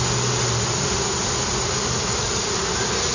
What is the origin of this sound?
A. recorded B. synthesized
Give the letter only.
A